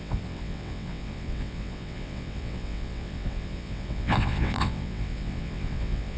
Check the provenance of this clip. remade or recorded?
remade